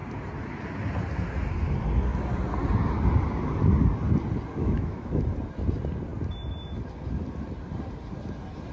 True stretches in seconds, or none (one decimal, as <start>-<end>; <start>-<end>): 0.0-4.6; 5.2-8.7